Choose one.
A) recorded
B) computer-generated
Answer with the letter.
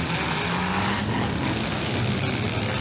A